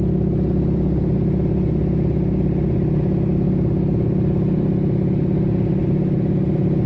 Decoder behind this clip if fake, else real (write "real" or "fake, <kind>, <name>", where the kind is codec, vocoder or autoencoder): real